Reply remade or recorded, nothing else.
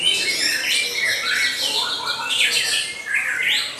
recorded